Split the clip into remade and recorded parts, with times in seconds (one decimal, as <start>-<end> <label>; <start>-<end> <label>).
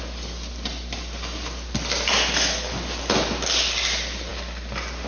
0.0-5.1 recorded